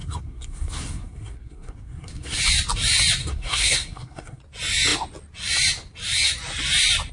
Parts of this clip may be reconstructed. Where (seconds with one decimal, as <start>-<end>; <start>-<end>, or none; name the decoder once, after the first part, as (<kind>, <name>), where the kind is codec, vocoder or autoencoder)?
0.0-2.4 (codec, SNAC); 3.2-4.4